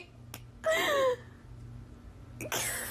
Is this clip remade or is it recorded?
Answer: recorded